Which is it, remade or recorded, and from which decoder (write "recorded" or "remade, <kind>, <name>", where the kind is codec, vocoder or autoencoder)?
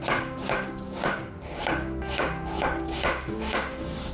remade, codec, DAC